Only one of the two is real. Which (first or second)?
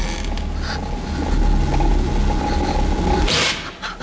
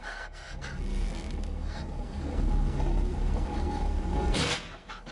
first